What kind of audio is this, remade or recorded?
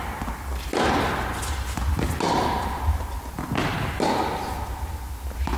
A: recorded